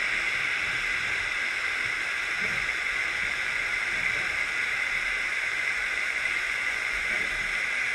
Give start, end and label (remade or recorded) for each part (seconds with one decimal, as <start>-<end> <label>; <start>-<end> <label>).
0.0-2.5 recorded; 2.5-3.6 remade; 3.6-5.5 recorded; 5.5-7.1 remade; 7.1-7.9 recorded